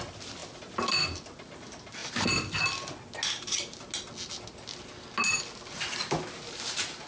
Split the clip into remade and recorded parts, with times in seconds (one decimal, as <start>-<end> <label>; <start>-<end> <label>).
0.0-7.1 recorded

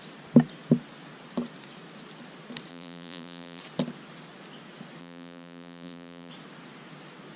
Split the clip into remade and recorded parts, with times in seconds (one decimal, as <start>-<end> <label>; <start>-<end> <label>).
0.0-2.7 recorded; 2.7-3.6 remade; 3.6-5.0 recorded; 5.0-6.3 remade; 6.3-7.4 recorded

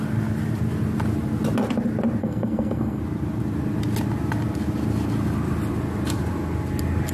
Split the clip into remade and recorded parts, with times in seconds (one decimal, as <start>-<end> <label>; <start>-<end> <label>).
0.0-2.2 recorded; 2.2-3.0 remade; 3.0-7.1 recorded

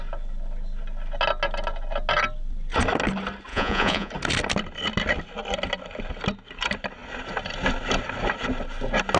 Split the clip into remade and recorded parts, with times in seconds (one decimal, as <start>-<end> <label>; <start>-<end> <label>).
0.0-3.5 recorded; 3.5-4.1 remade; 4.1-9.2 recorded

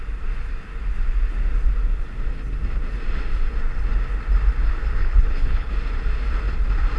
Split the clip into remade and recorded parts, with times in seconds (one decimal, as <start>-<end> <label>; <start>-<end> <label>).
0.0-5.0 recorded; 5.0-5.7 remade; 5.7-7.0 recorded

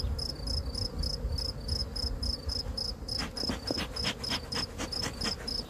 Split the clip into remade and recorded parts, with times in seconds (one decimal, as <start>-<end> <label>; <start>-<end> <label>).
0.0-5.7 recorded

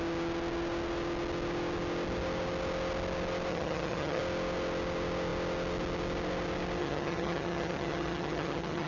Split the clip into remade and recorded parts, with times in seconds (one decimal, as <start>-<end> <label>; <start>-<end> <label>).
0.0-3.5 recorded; 3.5-4.2 remade; 4.2-6.8 recorded; 6.8-8.9 remade